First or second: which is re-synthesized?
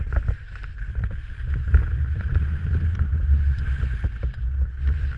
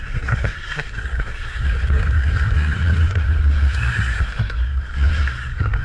second